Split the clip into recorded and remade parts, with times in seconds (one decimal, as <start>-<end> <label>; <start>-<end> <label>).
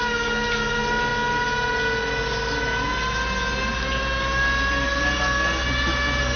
0.0-6.4 recorded